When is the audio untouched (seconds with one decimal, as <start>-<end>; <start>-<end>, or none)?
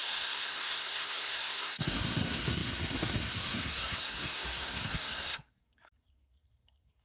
none